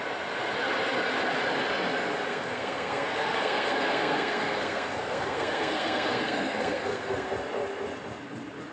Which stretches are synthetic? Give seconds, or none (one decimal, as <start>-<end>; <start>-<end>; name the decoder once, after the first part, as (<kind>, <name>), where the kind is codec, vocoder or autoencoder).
2.3-7.3 (codec, SNAC)